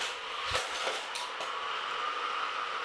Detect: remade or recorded recorded